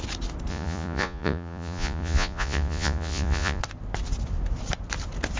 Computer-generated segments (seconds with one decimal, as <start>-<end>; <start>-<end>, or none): 0.5-3.6